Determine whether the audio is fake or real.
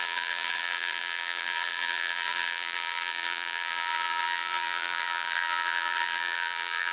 fake